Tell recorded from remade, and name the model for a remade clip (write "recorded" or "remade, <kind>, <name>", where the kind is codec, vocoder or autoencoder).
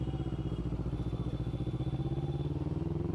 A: recorded